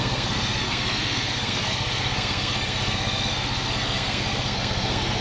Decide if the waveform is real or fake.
fake